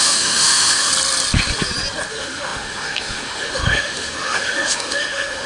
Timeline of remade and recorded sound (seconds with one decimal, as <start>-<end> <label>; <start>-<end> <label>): 0.0-0.9 remade; 0.9-2.1 recorded; 2.1-5.5 remade